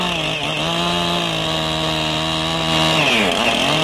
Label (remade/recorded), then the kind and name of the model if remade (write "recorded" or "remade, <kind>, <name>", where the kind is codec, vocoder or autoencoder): recorded